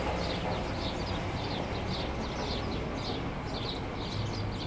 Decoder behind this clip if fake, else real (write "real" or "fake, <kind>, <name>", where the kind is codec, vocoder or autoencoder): real